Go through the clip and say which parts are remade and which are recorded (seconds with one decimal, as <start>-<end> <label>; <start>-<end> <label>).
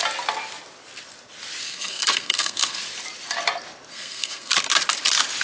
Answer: 0.0-1.6 recorded; 1.6-2.8 remade; 2.8-3.9 recorded; 3.9-4.5 remade; 4.5-5.4 recorded